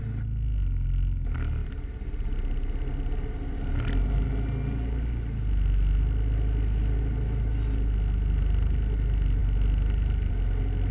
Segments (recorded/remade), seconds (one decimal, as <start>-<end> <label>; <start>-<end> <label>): 0.0-10.9 recorded